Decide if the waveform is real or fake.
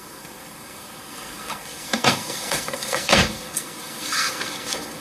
fake